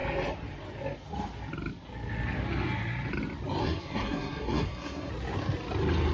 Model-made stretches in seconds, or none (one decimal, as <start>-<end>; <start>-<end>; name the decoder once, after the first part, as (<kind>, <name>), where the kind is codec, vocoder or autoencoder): 3.6-5.1 (codec, SNAC)